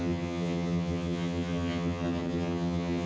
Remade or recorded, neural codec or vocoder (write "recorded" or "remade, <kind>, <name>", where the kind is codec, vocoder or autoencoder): remade, vocoder, HiFi-GAN